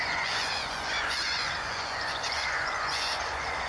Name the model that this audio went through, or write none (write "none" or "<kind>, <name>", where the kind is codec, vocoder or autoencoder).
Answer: vocoder, Vocos